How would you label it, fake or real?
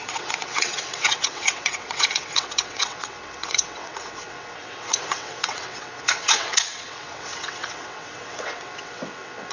fake